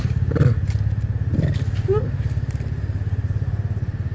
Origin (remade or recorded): recorded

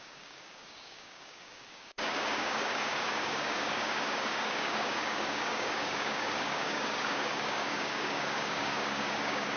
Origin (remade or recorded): remade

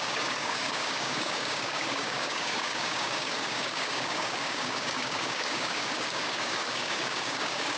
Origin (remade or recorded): remade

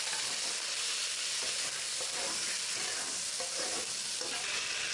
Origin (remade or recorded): recorded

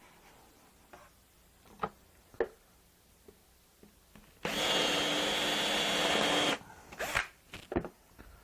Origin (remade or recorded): recorded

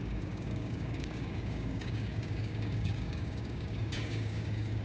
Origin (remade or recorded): remade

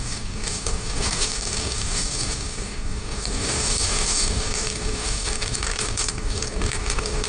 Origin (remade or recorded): remade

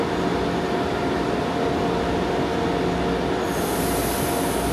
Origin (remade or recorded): recorded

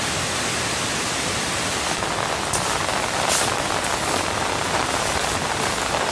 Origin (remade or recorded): recorded